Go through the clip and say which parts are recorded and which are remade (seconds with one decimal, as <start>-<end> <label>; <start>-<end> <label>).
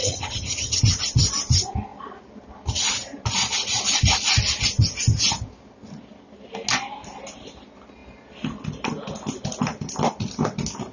0.0-0.8 remade; 0.8-10.9 recorded